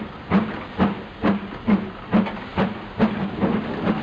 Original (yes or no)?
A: yes